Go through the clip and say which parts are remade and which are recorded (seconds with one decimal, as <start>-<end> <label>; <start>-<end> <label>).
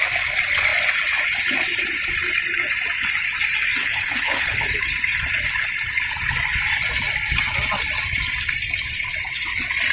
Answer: 0.0-3.8 recorded; 3.8-4.8 remade; 4.8-9.9 recorded